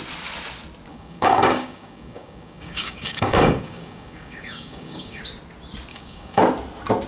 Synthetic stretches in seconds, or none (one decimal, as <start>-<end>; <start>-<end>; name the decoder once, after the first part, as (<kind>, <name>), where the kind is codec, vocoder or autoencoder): 0.9-5.2 (codec, DAC); 5.9-6.4